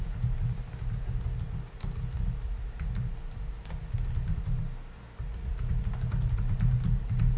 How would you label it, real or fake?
real